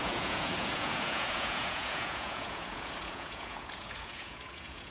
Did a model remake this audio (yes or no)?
yes